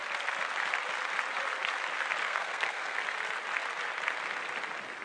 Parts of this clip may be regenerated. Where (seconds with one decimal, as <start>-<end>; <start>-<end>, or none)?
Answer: 2.2-3.0

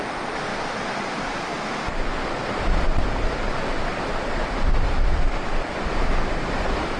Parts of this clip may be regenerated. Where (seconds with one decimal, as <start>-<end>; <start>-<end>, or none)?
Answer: 0.0-0.5; 1.1-1.5; 5.7-7.0

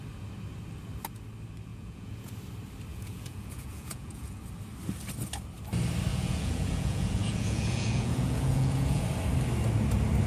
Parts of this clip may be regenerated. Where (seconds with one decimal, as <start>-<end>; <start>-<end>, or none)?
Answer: 1.7-2.3; 2.9-4.4; 6.1-9.0

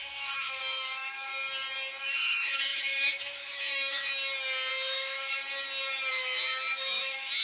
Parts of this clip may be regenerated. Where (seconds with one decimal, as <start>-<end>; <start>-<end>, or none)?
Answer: 0.0-1.3; 2.0-4.1; 4.7-5.4; 6.1-7.4

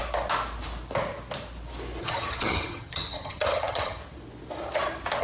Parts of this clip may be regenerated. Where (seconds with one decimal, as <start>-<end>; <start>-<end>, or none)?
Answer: 2.0-4.0

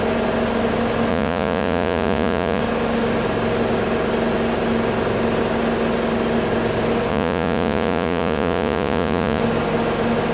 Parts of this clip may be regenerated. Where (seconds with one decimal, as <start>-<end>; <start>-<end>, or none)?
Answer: 1.1-2.6; 7.1-9.4

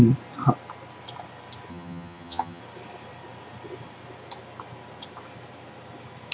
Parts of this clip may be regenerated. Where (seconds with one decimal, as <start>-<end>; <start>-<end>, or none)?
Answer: 1.7-2.6